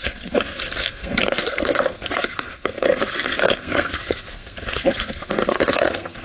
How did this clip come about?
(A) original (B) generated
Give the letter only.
B